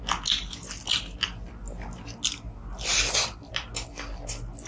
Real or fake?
real